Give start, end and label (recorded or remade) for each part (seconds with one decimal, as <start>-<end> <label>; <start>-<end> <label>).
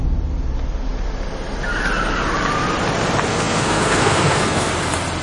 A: 0.0-3.3 recorded; 3.3-4.7 remade; 4.7-5.2 recorded